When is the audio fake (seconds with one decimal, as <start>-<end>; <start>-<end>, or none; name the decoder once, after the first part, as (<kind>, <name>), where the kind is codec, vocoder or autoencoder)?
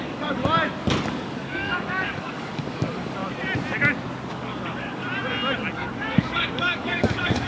0.0-0.4 (codec, DAC); 1.1-3.2; 4.3-5.0; 5.7-7.5